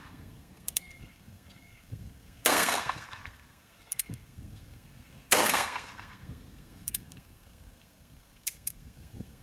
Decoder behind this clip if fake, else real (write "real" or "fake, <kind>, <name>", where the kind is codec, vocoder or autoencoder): fake, codec, SNAC